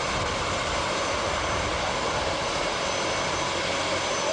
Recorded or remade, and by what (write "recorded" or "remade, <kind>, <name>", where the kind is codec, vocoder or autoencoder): recorded